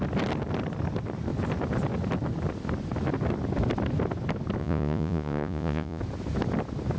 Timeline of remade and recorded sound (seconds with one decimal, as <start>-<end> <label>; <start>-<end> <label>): 0.0-4.6 recorded; 4.6-6.0 remade; 6.0-7.0 recorded